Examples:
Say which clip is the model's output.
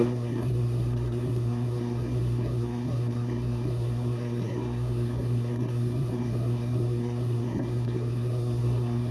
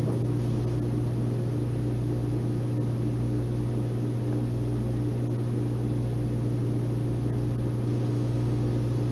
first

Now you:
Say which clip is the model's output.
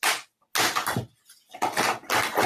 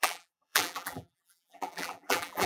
second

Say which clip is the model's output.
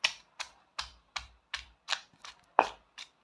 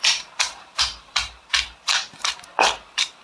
second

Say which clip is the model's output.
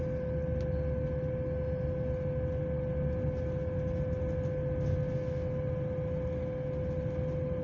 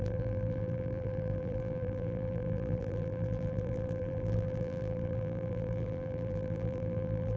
second